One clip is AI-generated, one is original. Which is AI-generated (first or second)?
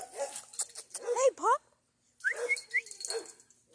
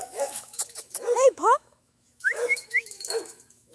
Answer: second